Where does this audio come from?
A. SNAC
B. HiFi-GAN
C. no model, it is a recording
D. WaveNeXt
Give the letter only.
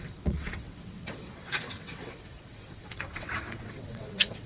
D